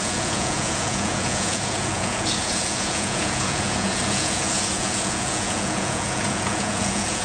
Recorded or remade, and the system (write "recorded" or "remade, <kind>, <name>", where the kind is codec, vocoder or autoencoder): remade, vocoder, Vocos